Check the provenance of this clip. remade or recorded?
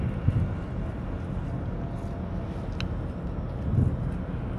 recorded